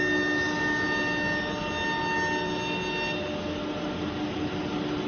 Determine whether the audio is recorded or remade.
recorded